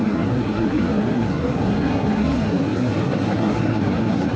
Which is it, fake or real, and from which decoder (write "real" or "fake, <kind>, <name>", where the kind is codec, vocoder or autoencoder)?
fake, codec, SNAC